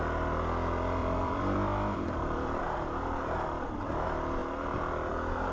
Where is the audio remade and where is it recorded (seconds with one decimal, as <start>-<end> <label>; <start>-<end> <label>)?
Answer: 0.0-1.0 recorded; 1.0-3.9 remade; 3.9-5.5 recorded